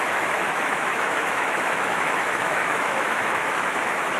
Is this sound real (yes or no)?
no